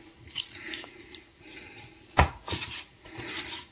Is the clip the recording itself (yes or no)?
no